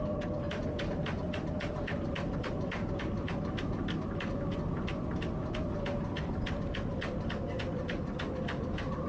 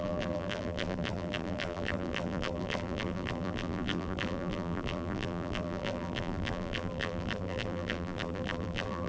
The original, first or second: first